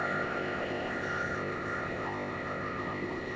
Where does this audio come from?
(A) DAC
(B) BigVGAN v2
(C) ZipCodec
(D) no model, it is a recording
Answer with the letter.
C